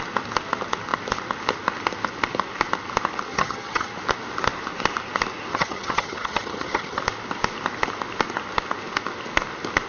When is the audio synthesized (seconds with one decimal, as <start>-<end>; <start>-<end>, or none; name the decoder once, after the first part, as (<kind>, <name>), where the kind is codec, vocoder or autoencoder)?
3.3-3.9 (vocoder, HiFi-GAN); 5.5-7.0